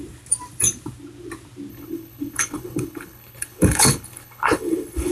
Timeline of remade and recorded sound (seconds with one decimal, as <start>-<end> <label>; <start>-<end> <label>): 0.0-1.7 recorded; 1.7-5.1 remade